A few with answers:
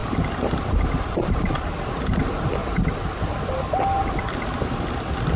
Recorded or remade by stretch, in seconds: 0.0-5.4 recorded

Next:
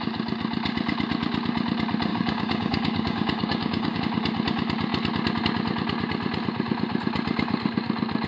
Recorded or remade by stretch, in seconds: 0.0-2.1 recorded; 2.1-4.0 remade; 4.0-8.3 recorded